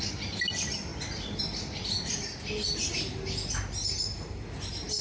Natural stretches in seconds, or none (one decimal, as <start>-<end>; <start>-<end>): 0.0-5.0